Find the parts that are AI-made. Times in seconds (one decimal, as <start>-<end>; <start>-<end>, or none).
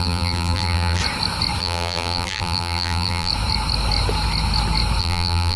0.0-1.0; 1.6-3.3; 5.0-5.6